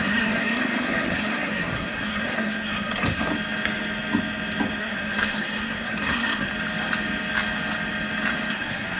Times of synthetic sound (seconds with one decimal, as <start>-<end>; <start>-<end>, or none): 0.0-3.3; 4.8-6.5; 8.5-9.0